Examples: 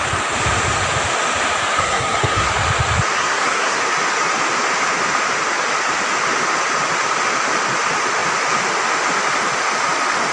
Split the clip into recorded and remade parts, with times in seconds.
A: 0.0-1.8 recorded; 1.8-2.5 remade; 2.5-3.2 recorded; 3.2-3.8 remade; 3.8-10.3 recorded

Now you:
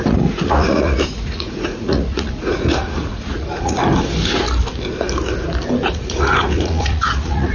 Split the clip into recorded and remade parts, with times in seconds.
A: 0.0-3.8 remade; 3.8-5.9 recorded; 5.9-7.5 remade